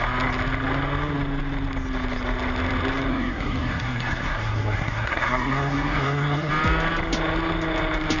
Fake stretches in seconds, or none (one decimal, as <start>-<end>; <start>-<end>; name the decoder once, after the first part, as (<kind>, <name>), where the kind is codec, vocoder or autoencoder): 3.1-6.5 (codec, SNAC)